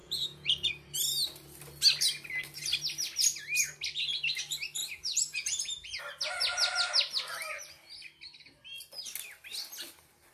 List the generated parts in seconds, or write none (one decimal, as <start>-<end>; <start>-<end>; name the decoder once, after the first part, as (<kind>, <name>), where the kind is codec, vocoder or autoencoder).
0.0-0.7 (vocoder, Vocos); 4.8-6.0